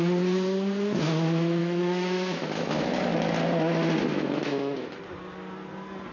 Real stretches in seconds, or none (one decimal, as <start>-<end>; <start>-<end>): 0.0-1.6; 2.9-4.1; 5.0-6.1